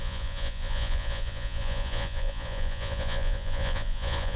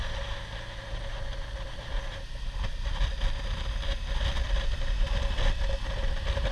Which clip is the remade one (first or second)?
first